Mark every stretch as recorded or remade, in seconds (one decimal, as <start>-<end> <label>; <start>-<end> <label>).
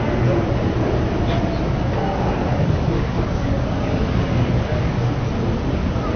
0.0-2.5 recorded; 2.5-5.1 remade; 5.1-6.2 recorded